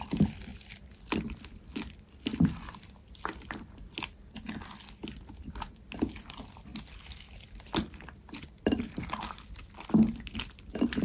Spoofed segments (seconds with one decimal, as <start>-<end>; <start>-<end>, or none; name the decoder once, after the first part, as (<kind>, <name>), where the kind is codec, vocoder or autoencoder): none